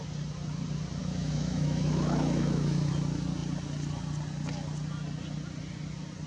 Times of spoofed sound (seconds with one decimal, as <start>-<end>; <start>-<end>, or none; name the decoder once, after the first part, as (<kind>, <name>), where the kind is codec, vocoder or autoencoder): 1.0-2.9 (autoencoder, DAC-VAE)